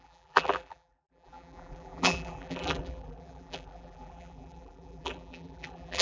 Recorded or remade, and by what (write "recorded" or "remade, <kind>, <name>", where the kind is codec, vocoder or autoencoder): remade, vocoder, BigVGAN v2